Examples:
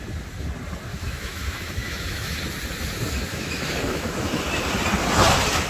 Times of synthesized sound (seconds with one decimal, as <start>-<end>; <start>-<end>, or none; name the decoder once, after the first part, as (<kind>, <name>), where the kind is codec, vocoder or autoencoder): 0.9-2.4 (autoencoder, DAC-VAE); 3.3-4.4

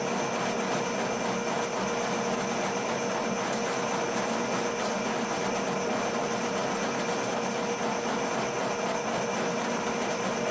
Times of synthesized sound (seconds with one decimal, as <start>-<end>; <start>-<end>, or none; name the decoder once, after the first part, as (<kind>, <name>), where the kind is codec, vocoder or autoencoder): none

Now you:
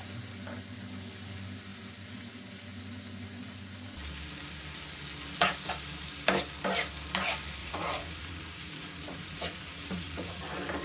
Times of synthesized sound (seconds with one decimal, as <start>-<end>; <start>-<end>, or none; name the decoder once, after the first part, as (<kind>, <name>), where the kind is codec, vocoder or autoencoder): 7.6-10.4 (vocoder, Vocos)

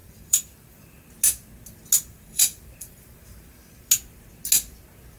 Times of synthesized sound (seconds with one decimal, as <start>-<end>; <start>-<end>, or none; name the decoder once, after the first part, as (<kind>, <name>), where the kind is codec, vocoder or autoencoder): 0.0-1.1 (vocoder, BigVGAN v2); 2.1-3.9

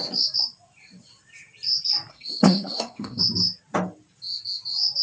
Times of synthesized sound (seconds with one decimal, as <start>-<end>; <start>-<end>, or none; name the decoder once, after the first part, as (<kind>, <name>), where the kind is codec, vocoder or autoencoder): 2.1-3.2 (codec, SNAC)

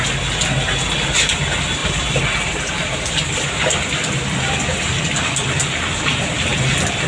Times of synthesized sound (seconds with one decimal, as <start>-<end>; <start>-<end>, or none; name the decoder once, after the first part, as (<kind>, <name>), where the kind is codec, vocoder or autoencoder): none

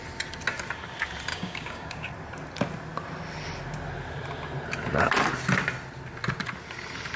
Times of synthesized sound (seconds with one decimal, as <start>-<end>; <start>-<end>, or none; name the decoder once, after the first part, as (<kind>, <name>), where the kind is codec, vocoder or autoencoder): 1.3-2.1 (codec, DAC)

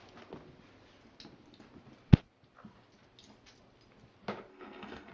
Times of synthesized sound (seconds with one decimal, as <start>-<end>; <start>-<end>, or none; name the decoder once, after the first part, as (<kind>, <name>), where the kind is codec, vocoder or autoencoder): 4.5-5.1 (codec, SNAC)